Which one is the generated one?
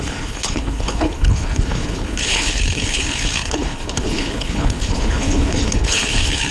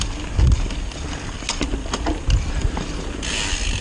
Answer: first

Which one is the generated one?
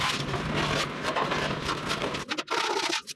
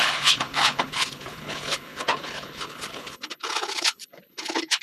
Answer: second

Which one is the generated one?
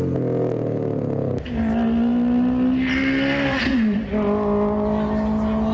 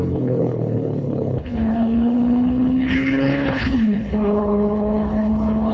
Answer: second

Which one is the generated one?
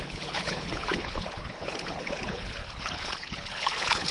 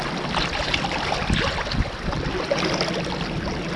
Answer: first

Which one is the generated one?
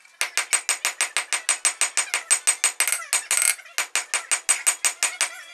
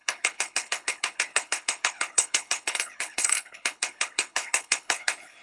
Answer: second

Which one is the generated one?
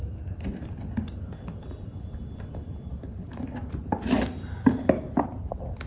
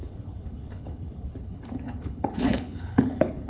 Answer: second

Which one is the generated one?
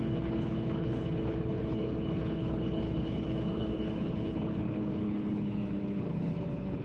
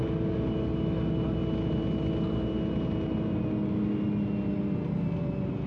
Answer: first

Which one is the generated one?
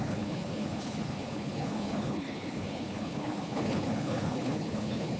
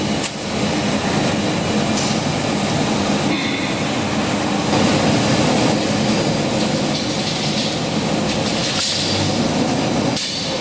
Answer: first